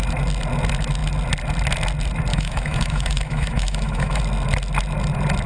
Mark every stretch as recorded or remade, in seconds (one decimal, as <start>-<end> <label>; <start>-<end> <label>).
0.0-2.3 recorded; 2.3-4.2 remade; 4.2-5.5 recorded